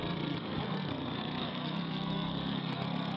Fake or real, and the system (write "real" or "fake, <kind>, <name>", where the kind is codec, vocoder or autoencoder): fake, codec, SNAC